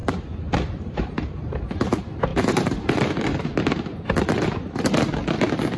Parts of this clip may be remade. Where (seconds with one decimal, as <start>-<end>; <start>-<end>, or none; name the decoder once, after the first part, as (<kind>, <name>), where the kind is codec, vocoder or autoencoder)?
0.0-1.7 (vocoder, BigVGAN v2); 2.3-4.0; 5.2-5.8